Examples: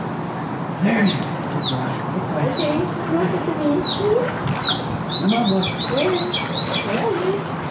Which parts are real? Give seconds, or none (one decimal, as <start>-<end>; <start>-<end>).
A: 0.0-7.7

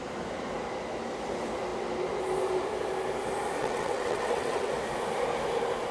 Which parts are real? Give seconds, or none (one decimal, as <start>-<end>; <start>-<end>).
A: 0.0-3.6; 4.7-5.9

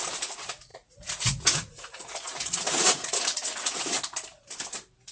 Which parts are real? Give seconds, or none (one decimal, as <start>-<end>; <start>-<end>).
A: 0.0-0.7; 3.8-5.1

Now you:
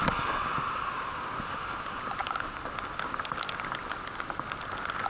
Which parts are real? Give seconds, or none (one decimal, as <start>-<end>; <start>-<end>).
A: 0.0-5.1

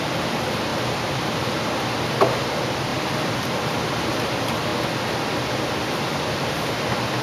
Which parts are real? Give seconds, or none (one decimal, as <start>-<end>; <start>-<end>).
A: 4.7-6.3

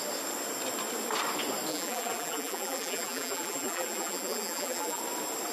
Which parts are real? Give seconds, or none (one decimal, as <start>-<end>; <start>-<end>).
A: 0.0-1.7; 5.0-5.5

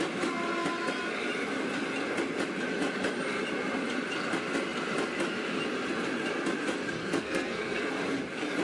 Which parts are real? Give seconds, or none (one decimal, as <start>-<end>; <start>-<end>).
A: 0.0-7.0; 7.9-8.6

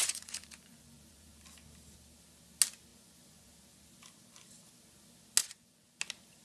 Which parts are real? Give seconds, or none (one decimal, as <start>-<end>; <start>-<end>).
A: 1.4-2.9; 3.5-5.4; 6.0-6.4